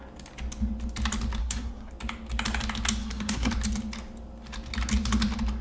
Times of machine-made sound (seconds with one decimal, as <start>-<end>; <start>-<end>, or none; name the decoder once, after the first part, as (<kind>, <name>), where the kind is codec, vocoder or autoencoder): 1.4-1.9 (codec, SNAC); 3.0-3.5